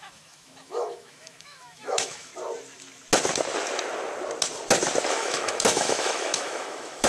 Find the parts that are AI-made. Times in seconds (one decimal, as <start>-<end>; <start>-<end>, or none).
0.0-2.3; 5.1-7.1